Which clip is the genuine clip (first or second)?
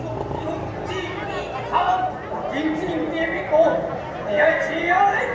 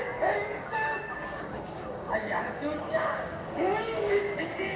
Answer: first